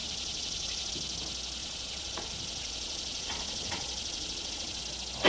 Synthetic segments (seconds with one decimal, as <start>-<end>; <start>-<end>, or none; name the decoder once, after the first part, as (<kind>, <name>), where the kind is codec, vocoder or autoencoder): 0.0-0.9 (vocoder, Vocos); 1.6-4.8